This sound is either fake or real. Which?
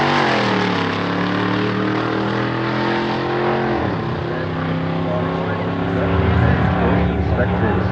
real